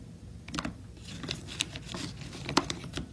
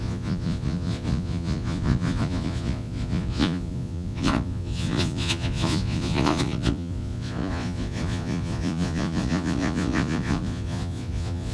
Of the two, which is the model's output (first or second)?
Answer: second